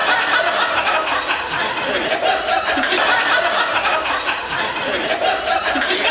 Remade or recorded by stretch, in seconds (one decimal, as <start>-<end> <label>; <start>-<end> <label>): 0.0-6.1 recorded